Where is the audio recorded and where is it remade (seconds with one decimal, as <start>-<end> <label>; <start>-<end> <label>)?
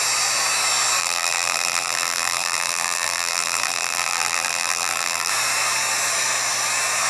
0.0-1.0 recorded; 1.0-5.3 remade; 5.3-7.1 recorded